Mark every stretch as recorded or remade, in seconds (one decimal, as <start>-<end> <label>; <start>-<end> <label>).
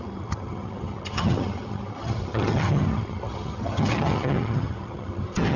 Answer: 0.0-5.6 remade